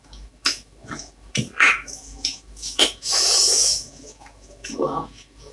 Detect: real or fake fake